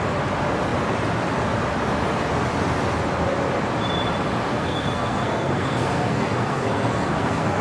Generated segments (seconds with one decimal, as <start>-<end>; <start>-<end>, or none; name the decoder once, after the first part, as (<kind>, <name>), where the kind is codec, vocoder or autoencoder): 4.5-7.6 (codec, SNAC)